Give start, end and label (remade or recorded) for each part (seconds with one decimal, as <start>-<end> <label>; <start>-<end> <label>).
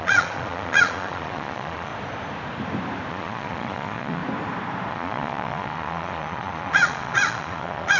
0.0-1.9 remade; 1.9-3.1 recorded; 3.1-4.2 remade; 4.2-4.9 recorded; 4.9-8.0 remade